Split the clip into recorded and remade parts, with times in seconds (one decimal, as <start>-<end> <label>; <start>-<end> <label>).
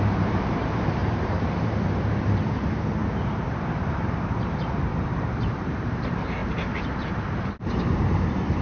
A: 0.0-8.6 remade